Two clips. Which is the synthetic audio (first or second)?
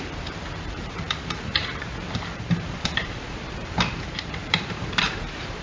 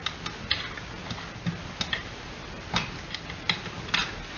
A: first